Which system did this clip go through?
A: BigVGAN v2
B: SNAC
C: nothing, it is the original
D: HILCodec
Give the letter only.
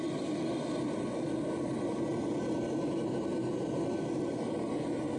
C